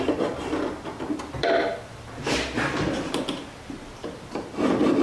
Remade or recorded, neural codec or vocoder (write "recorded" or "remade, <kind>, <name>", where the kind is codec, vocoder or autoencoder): remade, vocoder, BigVGAN v2